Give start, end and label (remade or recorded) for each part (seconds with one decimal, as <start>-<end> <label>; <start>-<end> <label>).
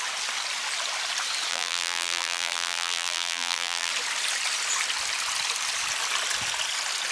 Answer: 0.0-1.5 recorded; 1.5-3.9 remade; 3.9-7.1 recorded